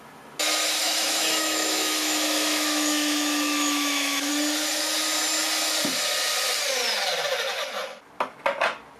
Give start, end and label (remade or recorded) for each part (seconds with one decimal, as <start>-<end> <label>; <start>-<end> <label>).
0.0-0.8 recorded; 0.8-4.3 remade; 4.3-9.0 recorded